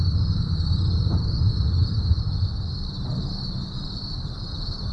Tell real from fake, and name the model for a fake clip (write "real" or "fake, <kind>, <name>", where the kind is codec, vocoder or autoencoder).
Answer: real